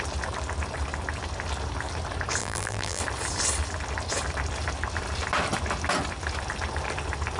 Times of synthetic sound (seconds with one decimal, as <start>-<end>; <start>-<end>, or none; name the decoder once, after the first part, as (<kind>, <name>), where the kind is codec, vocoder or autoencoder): 2.4-3.0 (vocoder, BigVGAN v2)